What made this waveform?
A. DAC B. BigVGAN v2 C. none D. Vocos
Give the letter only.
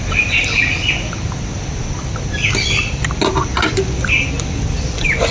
C